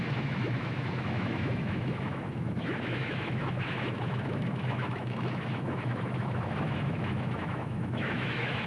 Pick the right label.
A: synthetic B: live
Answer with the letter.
A